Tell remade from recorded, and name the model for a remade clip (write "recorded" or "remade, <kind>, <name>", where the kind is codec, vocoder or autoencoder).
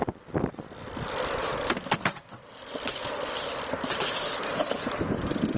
recorded